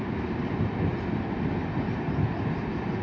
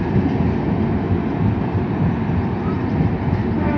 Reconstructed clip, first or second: first